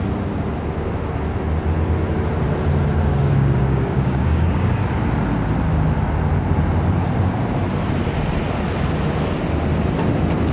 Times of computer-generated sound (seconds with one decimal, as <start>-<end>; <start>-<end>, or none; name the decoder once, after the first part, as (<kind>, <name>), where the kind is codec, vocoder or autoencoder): 3.1-4.8 (codec, DAC)